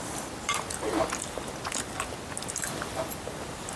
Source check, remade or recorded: recorded